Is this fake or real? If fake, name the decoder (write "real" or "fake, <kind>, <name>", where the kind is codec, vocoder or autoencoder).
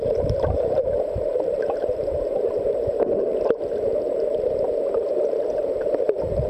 fake, vocoder, BigVGAN v2